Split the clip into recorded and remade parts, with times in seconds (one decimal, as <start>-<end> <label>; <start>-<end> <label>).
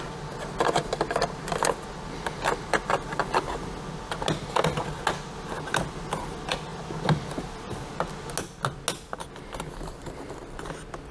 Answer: 0.0-11.1 recorded